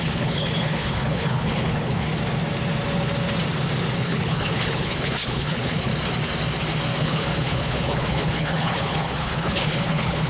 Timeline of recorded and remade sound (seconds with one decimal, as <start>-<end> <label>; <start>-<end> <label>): 0.0-2.1 remade; 2.1-4.0 recorded; 4.0-5.9 remade; 5.9-7.0 recorded; 7.0-10.3 remade